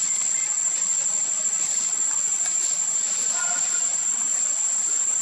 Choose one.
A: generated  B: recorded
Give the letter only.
B